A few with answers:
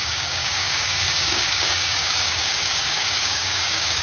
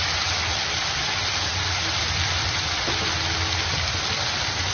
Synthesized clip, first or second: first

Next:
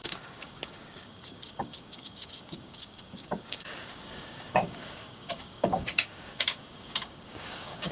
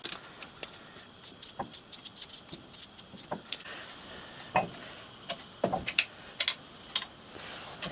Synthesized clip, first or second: first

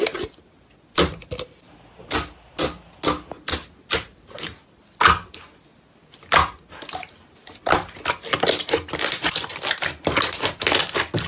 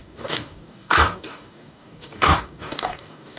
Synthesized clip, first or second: second